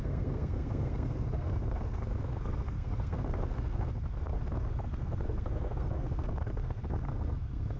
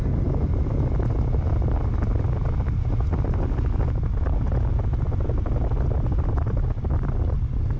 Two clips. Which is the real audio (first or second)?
second